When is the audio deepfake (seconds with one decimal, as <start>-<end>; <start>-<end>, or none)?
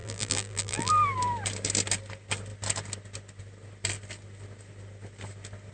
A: 0.0-0.9